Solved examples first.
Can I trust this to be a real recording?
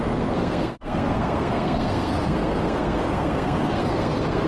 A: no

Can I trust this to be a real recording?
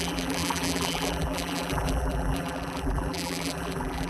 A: no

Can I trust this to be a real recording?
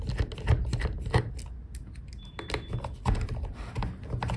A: yes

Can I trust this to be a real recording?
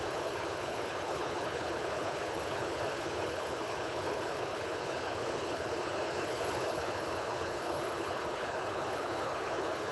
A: no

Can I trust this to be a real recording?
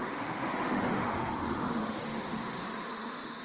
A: no